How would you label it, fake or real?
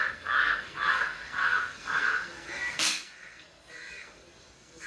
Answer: fake